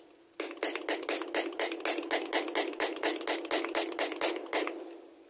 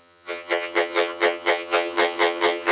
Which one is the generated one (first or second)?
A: second